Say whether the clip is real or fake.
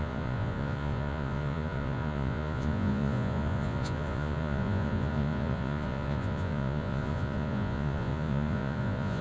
fake